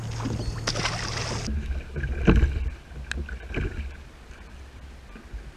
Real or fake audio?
real